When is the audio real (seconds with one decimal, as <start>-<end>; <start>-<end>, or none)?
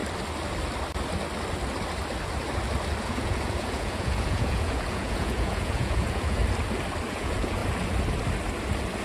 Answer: 0.0-3.0; 6.4-7.1; 7.6-9.0